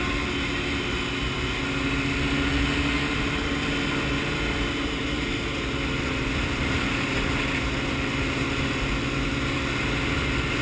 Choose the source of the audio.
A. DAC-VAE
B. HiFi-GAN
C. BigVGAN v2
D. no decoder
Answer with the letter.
D